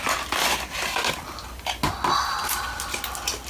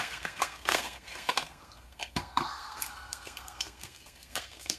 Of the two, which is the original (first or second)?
first